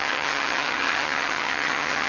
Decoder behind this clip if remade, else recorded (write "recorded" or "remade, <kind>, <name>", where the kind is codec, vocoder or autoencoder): remade, vocoder, HiFi-GAN